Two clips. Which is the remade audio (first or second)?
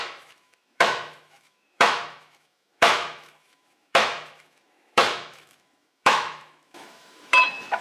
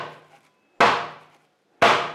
first